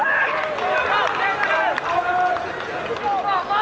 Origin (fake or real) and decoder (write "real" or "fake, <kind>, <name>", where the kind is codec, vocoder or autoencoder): real